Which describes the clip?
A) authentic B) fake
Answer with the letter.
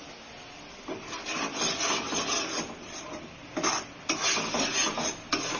A